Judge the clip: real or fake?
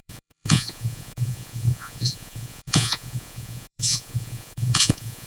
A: fake